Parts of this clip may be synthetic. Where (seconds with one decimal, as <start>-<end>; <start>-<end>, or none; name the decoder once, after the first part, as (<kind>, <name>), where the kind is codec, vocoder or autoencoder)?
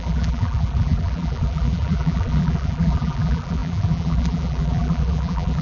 0.0-5.6 (vocoder, BigVGAN v2)